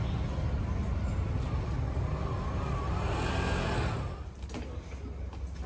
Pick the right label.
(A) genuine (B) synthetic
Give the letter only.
A